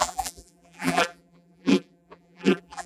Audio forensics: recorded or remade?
remade